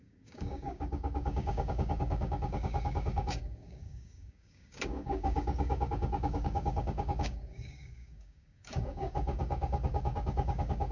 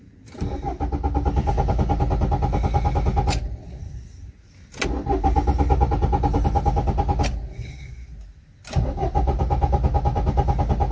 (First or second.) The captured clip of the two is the second